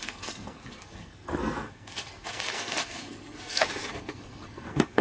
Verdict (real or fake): fake